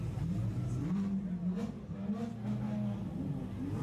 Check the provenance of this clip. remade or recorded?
recorded